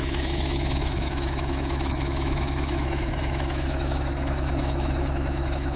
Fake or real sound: fake